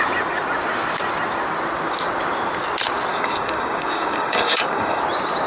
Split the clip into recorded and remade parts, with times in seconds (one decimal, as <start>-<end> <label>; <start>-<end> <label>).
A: 0.0-3.1 recorded; 3.1-5.0 remade; 5.0-5.5 recorded